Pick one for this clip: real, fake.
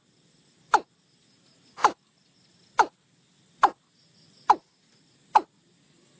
real